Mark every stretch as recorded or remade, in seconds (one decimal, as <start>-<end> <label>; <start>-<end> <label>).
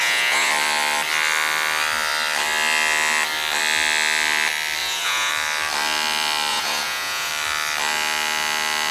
0.0-0.5 remade; 0.5-4.8 recorded; 4.8-5.3 remade; 5.3-6.5 recorded; 6.5-7.3 remade; 7.3-8.9 recorded